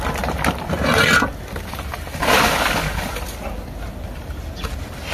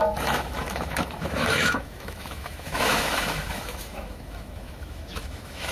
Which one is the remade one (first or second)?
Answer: second